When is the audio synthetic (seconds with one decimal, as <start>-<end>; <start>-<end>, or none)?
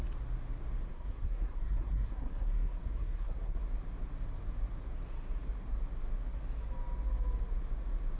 0.9-3.6